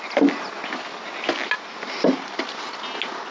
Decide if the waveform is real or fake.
real